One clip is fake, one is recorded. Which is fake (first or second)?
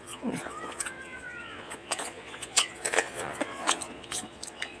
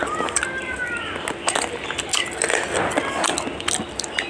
first